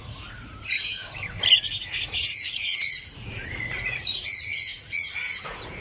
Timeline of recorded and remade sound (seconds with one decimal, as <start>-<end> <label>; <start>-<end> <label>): 0.0-1.0 remade; 1.0-1.9 recorded; 1.9-5.8 remade